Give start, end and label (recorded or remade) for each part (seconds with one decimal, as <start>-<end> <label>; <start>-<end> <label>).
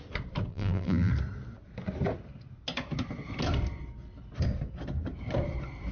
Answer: 0.0-0.5 recorded; 0.5-1.1 remade; 1.1-5.9 recorded